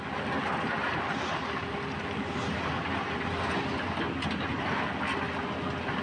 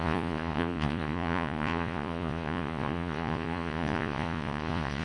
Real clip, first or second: first